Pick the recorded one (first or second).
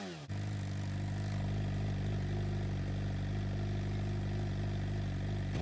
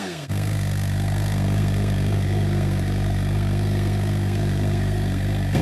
first